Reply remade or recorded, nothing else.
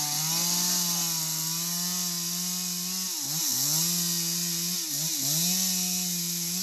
recorded